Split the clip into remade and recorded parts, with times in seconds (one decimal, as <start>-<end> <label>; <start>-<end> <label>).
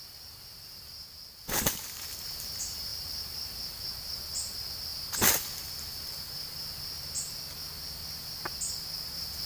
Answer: 0.0-2.9 recorded; 2.9-3.5 remade; 3.5-9.5 recorded